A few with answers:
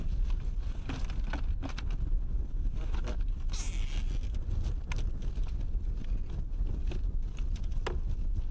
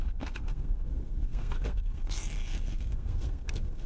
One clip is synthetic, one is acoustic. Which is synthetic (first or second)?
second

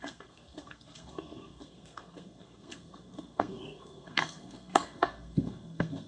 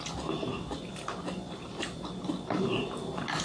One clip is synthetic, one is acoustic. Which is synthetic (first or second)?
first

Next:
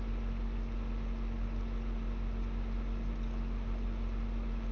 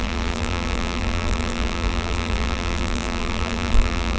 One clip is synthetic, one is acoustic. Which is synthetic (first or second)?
second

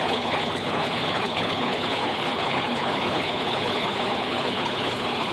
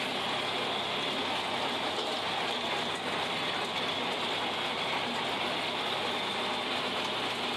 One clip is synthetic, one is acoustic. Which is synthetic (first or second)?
first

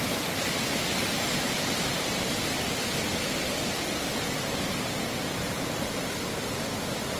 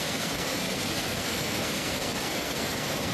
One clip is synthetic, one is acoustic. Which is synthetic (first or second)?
second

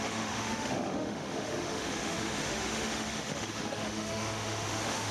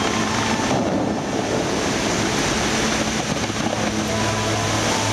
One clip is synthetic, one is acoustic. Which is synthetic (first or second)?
first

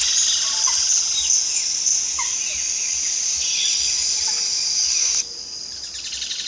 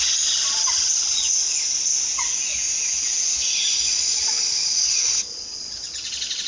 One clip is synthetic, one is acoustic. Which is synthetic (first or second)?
second